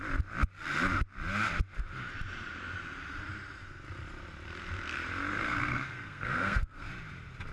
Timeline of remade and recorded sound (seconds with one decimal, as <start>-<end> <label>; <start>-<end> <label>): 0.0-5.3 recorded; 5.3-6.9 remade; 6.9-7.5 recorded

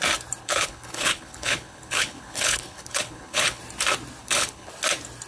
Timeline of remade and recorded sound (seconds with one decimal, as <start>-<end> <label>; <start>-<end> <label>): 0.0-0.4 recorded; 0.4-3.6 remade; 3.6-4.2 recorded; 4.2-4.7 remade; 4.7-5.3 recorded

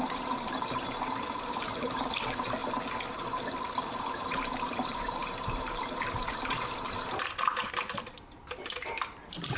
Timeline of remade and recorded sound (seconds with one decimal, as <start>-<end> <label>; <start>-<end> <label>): 0.0-2.6 remade; 2.6-4.0 recorded; 4.0-9.6 remade

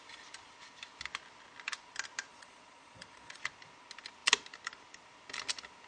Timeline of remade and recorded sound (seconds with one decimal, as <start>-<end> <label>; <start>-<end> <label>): 0.0-2.3 recorded; 2.3-3.4 remade; 3.4-5.9 recorded

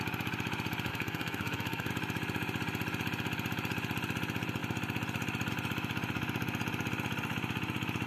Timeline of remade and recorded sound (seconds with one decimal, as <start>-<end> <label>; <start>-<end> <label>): 0.0-0.9 recorded; 0.9-1.9 remade; 1.9-8.1 recorded